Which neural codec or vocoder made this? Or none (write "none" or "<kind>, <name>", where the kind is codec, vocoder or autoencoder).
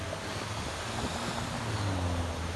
none